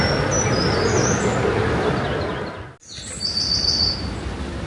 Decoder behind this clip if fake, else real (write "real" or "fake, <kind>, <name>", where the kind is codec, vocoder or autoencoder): real